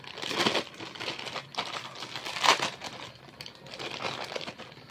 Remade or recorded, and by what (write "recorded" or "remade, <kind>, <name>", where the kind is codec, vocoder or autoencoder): recorded